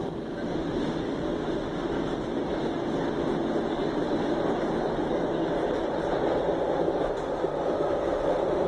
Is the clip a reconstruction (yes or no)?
no